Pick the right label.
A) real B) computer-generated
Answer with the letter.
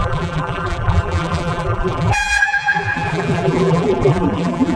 B